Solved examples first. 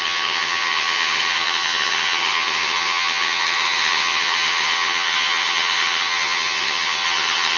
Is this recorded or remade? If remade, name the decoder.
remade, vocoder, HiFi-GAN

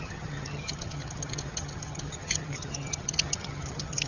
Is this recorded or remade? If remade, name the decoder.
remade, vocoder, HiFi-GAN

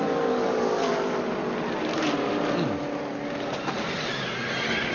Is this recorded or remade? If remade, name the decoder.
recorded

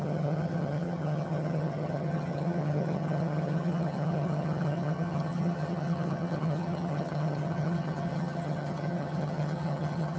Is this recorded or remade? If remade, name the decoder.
remade, vocoder, HiFi-GAN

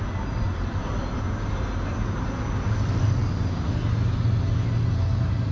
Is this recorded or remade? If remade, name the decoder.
recorded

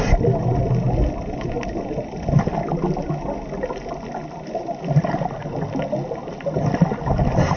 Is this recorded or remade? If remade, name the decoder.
recorded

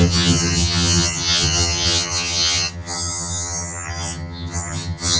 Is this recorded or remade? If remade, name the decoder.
remade, vocoder, HiFi-GAN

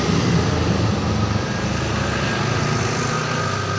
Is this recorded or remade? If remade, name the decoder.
recorded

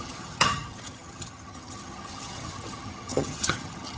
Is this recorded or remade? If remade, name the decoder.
remade, vocoder, HiFi-GAN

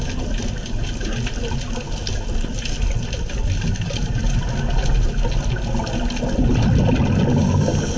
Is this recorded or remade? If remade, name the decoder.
recorded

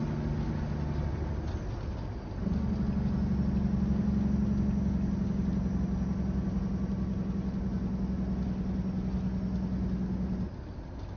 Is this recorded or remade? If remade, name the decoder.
recorded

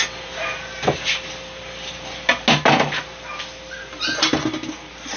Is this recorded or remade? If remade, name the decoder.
recorded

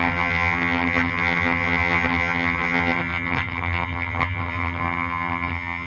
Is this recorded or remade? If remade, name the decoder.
remade, vocoder, HiFi-GAN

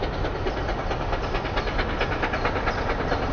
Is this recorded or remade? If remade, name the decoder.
recorded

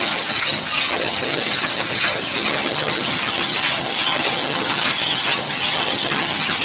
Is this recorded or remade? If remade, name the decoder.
remade, vocoder, HiFi-GAN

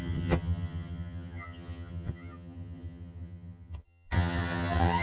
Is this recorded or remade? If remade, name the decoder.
remade, vocoder, HiFi-GAN